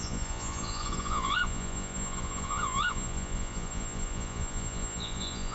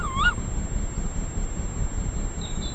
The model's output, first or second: first